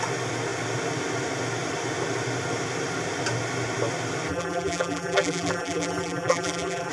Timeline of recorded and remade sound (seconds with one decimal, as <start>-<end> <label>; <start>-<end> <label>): 0.0-4.3 recorded; 4.3-6.9 remade